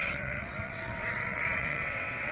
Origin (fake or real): fake